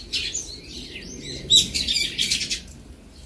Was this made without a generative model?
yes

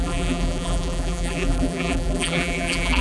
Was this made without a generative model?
no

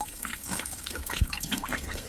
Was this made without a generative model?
no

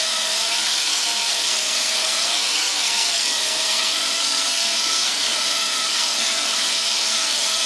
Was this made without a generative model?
no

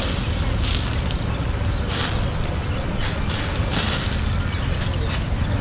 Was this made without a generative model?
yes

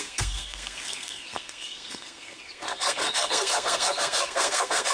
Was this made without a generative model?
no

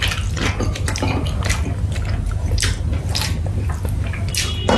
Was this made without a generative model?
yes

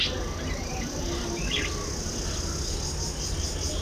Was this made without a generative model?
yes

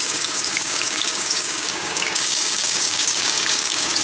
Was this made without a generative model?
no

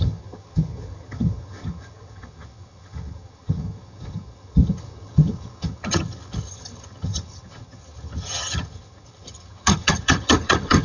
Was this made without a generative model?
no